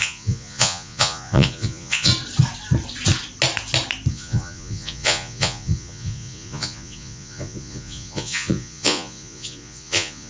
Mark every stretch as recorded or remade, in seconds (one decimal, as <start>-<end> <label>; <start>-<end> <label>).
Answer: 0.0-2.1 remade; 2.1-4.1 recorded; 4.1-10.3 remade